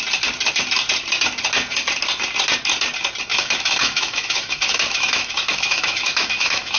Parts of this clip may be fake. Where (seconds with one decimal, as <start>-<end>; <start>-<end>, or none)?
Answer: 3.3-6.8